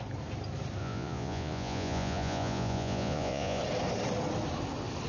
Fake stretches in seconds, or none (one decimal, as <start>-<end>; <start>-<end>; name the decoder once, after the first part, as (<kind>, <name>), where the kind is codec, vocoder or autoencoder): 0.8-3.6 (vocoder, Vocos)